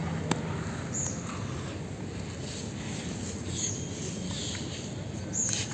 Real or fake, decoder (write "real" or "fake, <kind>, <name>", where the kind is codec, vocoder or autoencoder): real